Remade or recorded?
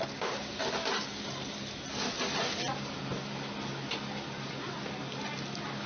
recorded